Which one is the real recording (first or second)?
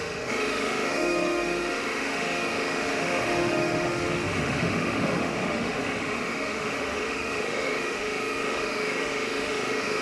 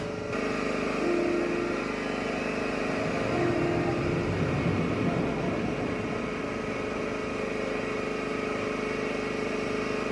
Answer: second